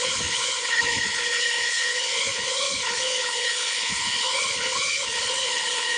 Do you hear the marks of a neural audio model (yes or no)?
yes